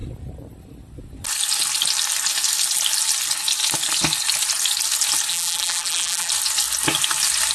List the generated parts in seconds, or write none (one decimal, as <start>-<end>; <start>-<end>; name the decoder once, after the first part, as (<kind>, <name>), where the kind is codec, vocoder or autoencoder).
5.3-6.3 (vocoder, BigVGAN v2)

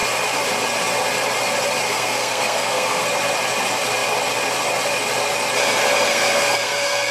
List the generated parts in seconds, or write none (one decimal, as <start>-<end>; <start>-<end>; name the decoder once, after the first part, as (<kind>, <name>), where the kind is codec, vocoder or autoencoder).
1.9-3.0 (codec, SNAC); 6.1-7.1

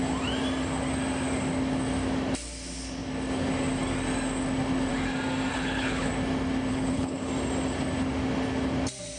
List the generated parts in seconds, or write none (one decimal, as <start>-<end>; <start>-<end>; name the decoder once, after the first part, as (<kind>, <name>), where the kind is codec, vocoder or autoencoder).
5.5-6.1 (codec, HILCodec); 6.7-7.3

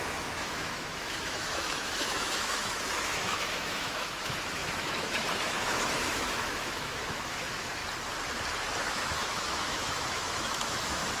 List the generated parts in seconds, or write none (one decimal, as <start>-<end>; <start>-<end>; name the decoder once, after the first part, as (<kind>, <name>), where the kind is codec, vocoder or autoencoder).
0.0-7.8 (autoencoder, DAC-VAE); 8.8-11.2

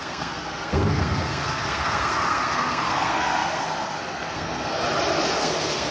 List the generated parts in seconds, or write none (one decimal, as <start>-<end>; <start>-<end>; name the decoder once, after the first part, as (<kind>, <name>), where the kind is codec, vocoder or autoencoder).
0.0-4.8 (codec, SNAC); 5.4-5.9

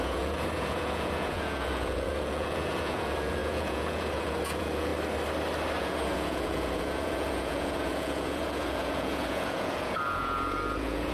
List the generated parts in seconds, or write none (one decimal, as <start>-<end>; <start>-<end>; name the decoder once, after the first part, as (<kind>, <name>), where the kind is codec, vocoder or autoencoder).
0.0-4.9 (vocoder, Vocos); 5.8-11.1

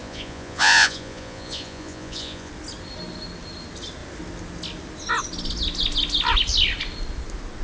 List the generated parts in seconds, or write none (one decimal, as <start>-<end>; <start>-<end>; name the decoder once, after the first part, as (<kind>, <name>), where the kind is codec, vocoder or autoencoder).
0.0-2.5 (vocoder, Vocos)

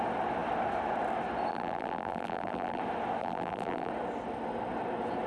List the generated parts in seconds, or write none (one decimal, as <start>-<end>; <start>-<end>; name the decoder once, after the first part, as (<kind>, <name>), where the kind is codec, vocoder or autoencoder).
1.5-2.8 (vocoder, BigVGAN v2); 3.2-3.9